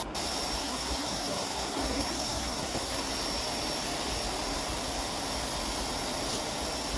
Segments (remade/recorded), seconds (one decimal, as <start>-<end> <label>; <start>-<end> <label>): 0.0-0.6 recorded; 0.6-3.1 remade; 3.1-7.0 recorded